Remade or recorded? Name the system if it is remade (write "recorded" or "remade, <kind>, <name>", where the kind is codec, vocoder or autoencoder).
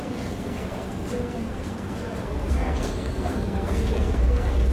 remade, codec, SNAC